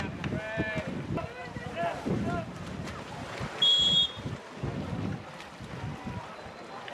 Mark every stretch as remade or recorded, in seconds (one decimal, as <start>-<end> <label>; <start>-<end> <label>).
0.0-1.4 recorded; 1.4-4.4 remade; 4.4-6.9 recorded